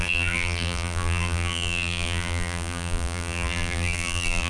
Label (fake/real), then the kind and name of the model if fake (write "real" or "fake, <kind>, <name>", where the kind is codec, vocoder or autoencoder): fake, vocoder, BigVGAN v2